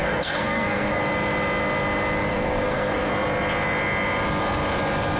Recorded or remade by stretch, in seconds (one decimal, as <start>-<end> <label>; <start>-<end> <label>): 0.0-1.0 remade; 1.0-2.3 recorded; 2.3-3.1 remade; 3.1-5.2 recorded